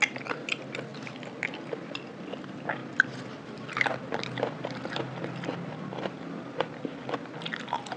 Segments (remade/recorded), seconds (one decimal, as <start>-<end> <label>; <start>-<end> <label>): 0.0-8.0 recorded